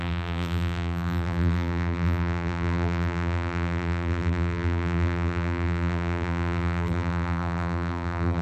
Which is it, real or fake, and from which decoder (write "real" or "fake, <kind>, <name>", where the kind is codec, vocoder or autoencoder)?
fake, vocoder, BigVGAN v2